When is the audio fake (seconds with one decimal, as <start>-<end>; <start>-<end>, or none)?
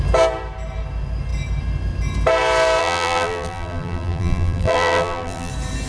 2.8-5.5